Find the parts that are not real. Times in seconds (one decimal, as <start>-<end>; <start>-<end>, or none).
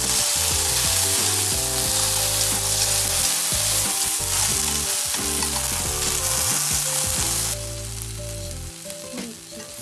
none